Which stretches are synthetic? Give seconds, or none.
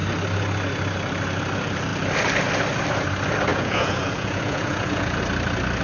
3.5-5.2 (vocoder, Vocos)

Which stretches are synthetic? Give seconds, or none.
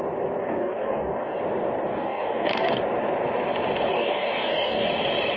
0.4-1.4 (codec, DAC); 1.9-2.8; 3.9-4.9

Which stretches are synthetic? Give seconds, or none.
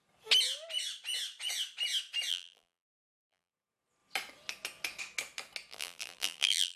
2.3-3.5 (vocoder, BigVGAN v2); 5.7-6.8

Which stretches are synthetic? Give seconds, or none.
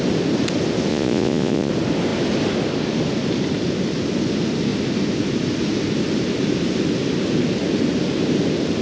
0.9-1.7 (vocoder, Vocos)